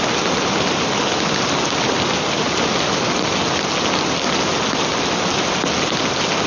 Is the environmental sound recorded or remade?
recorded